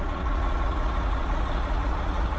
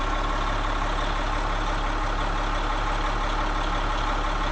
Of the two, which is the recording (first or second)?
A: second